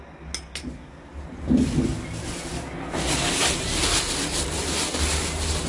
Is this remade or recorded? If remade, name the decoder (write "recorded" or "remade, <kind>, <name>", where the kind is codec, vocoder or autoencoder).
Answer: recorded